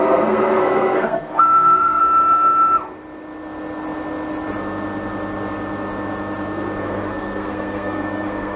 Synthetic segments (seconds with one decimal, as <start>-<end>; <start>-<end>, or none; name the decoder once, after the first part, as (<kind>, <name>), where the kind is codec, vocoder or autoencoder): 0.0-2.0 (codec, SNAC); 6.8-8.6